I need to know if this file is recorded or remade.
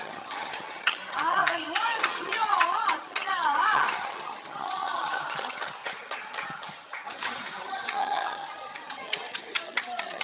remade